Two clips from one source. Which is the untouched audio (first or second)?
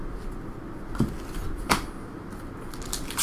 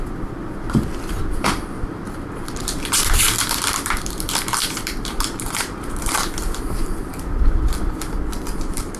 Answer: first